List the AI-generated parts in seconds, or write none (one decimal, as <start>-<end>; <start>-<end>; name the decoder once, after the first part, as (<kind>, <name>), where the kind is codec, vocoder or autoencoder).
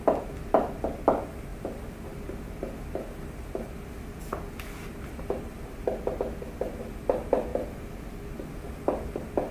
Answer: none